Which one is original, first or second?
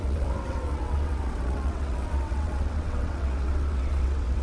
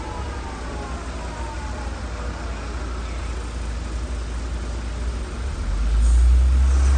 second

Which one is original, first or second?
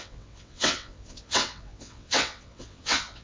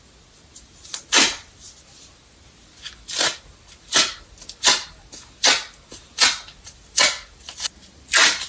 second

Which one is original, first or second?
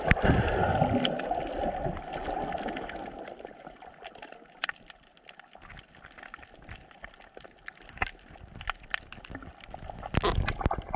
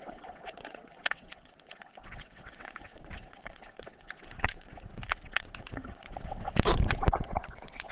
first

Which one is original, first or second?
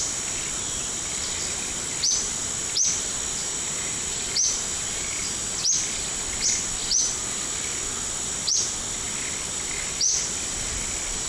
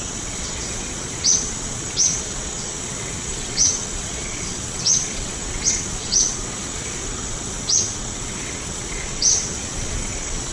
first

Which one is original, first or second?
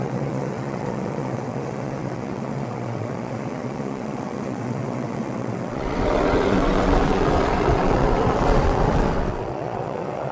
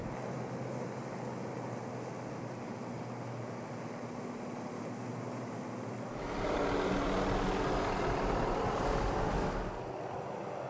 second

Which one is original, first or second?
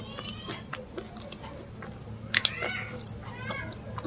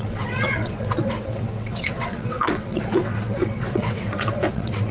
first